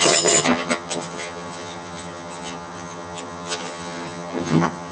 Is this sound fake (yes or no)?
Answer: yes